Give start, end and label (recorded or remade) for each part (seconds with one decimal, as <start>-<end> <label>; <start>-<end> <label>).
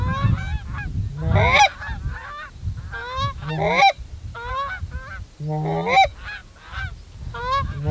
0.0-7.9 recorded